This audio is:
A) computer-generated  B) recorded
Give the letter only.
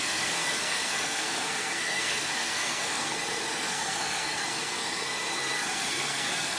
A